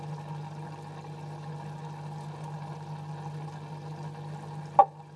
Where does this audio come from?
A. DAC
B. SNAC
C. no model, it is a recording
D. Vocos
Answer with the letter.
C